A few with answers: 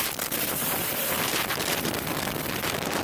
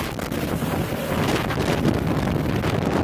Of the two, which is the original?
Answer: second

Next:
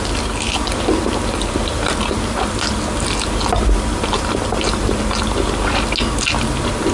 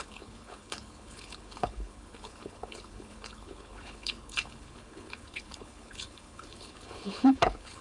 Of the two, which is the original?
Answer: first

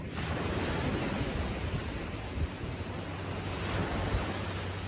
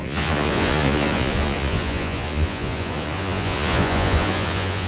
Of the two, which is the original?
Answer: first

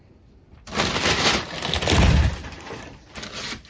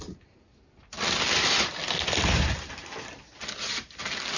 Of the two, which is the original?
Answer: second